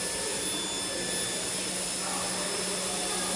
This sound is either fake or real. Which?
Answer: real